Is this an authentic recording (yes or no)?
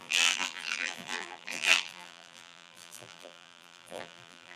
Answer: no